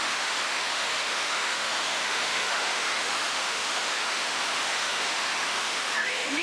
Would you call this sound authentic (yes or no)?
no